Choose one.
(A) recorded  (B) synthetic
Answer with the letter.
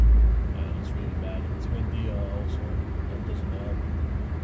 A